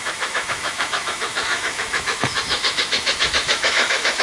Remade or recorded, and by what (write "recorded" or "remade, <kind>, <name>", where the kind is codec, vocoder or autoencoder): remade, autoencoder, DAC-VAE